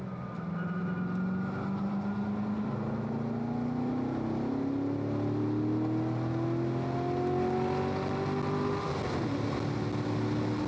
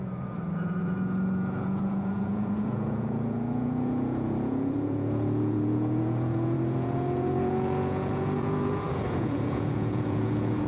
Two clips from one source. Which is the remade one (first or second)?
second